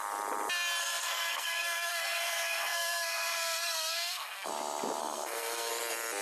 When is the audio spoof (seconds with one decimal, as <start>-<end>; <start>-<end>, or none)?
0.8-4.5; 5.0-5.7